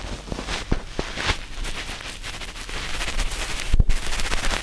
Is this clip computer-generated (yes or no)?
no